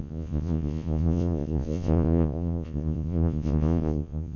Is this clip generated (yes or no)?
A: yes